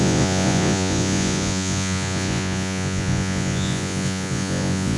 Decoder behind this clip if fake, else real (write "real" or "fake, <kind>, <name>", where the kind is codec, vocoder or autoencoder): fake, vocoder, Vocos